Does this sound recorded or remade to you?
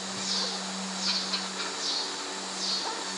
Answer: recorded